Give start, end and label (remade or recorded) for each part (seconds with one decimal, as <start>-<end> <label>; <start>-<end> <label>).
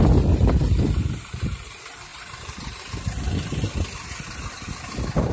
0.0-2.1 recorded; 2.1-2.8 remade; 2.8-5.3 recorded